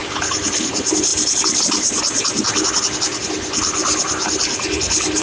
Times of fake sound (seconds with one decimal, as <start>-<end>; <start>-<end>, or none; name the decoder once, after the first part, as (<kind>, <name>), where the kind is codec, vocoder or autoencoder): none